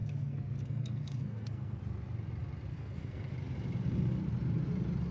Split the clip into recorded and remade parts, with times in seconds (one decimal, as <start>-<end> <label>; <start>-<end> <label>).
0.0-1.8 remade; 1.8-2.7 recorded; 2.7-3.3 remade; 3.3-5.1 recorded

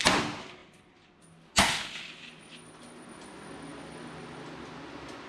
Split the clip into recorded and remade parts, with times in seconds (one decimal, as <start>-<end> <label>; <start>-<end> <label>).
0.0-5.3 recorded